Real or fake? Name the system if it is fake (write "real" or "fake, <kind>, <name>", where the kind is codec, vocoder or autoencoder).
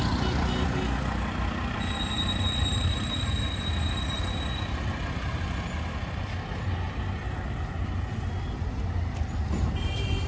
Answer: real